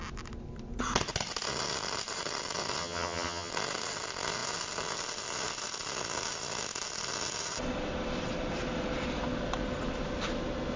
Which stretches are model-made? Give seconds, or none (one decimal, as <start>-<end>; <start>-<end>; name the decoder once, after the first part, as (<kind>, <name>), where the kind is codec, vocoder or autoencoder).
2.8-3.5 (vocoder, HiFi-GAN)